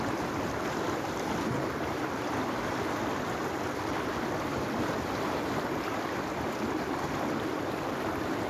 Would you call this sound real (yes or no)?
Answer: yes